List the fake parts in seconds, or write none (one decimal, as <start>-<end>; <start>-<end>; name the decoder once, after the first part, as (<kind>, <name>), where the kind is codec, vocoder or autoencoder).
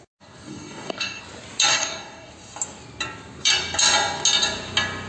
0.5-1.2 (codec, DAC); 1.7-2.3